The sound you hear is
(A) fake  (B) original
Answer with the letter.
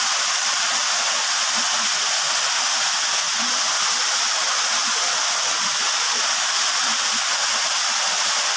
B